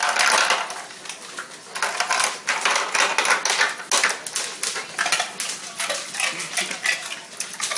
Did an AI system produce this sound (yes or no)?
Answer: no